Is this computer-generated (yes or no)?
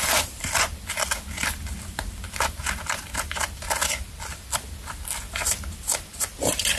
no